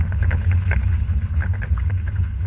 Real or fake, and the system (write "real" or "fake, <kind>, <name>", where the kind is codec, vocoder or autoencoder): fake, codec, HILCodec